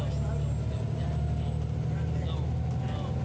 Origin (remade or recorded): recorded